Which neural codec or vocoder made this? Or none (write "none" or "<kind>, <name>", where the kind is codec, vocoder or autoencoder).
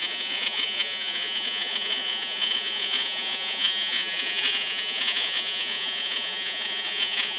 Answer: vocoder, Vocos